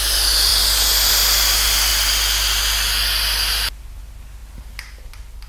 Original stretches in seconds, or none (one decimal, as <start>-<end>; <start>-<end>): 0.0-5.5